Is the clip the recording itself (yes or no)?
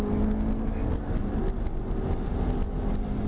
yes